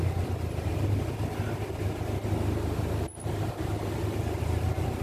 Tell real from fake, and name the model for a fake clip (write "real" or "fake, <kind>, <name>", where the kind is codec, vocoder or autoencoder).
real